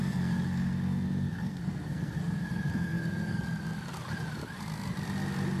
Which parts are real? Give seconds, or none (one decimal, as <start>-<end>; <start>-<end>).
3.4-5.6

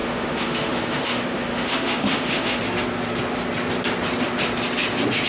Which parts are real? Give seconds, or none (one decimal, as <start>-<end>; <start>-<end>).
2.6-5.3

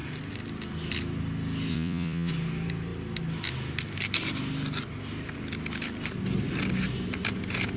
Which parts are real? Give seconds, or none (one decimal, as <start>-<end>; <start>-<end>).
0.0-1.7; 2.3-7.8